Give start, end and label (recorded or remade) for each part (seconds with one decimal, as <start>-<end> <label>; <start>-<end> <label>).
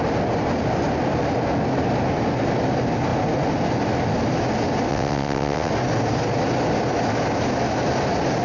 0.0-4.9 recorded; 4.9-5.7 remade; 5.7-8.4 recorded